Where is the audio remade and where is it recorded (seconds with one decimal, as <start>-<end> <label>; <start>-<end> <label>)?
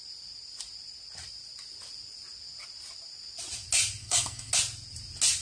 0.0-4.0 recorded; 4.0-4.5 remade; 4.5-5.4 recorded